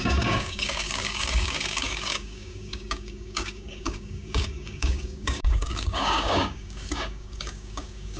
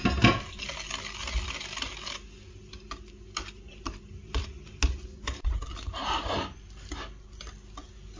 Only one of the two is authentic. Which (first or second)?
second